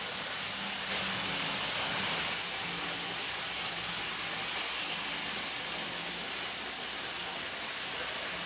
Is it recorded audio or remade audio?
recorded